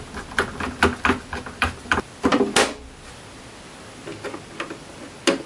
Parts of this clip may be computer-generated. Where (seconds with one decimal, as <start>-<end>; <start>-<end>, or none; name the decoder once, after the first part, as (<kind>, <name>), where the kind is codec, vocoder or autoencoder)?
none